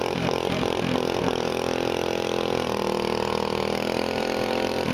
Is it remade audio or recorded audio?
remade